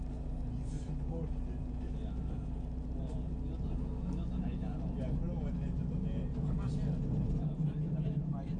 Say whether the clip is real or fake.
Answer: real